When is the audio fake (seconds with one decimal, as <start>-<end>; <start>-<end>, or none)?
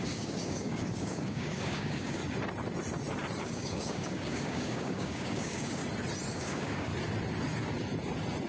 0.0-2.2; 3.4-5.8; 6.3-6.9